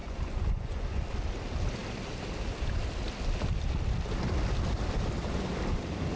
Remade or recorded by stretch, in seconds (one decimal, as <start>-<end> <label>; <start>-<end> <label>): 0.0-1.0 remade; 1.0-6.2 recorded